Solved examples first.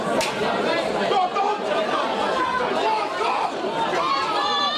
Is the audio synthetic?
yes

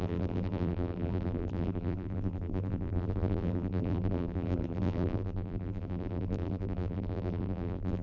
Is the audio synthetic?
yes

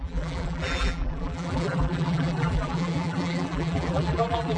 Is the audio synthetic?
yes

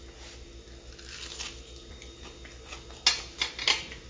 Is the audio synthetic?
no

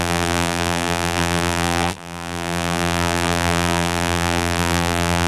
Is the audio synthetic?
yes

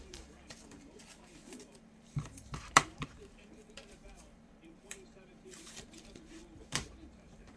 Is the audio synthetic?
yes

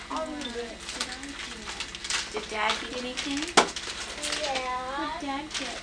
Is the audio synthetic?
no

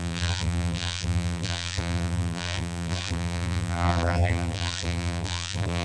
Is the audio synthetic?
yes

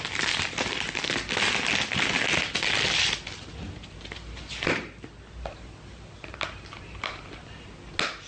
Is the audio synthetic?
no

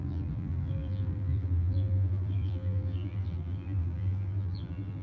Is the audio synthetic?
yes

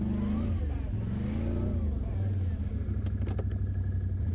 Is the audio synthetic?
no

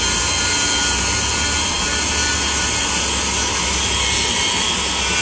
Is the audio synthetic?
no